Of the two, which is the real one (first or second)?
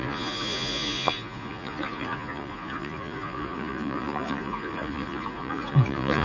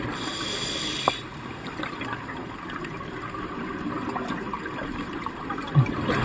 second